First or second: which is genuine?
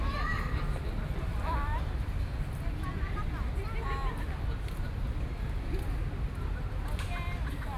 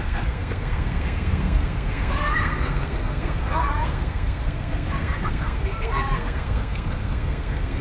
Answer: first